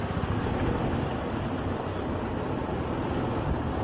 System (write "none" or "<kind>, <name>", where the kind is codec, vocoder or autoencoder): none